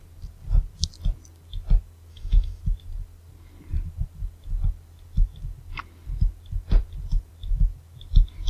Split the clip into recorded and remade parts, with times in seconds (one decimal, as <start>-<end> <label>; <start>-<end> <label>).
0.0-2.1 recorded; 2.1-2.6 remade; 2.6-8.5 recorded